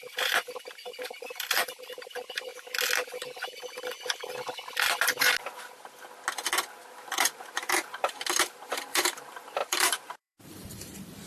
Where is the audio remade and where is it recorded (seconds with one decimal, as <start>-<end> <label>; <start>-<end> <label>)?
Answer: 0.0-2.5 remade; 2.5-6.9 recorded; 6.9-11.3 remade